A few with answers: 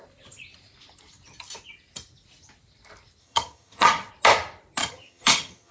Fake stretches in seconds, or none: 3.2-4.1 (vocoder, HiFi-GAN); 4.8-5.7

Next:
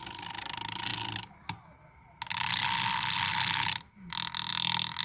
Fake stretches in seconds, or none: none